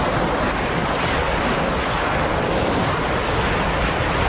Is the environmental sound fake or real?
real